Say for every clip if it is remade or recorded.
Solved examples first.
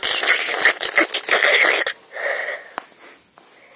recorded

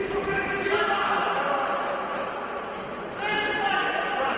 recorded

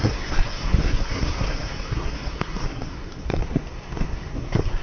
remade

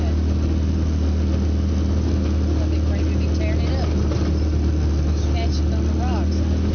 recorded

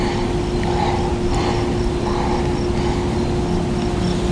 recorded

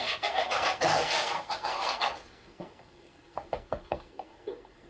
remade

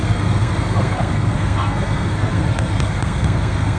remade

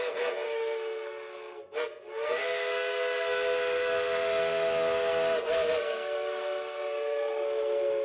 remade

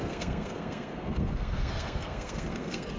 remade